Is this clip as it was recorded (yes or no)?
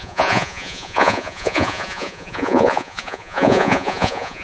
no